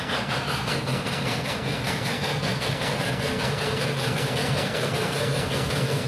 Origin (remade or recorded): remade